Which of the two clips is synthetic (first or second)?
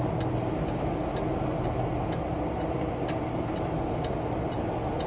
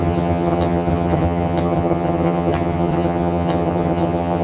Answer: second